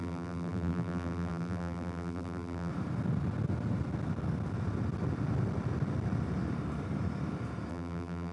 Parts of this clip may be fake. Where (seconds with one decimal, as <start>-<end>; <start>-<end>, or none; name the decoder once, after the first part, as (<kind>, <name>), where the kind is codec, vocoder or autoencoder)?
0.0-2.7 (vocoder, BigVGAN v2); 7.7-8.3